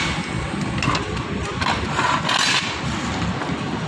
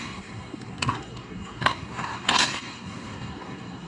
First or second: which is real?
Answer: first